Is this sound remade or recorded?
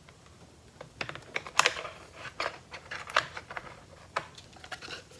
remade